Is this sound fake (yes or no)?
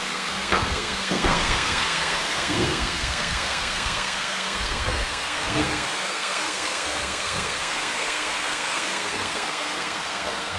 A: yes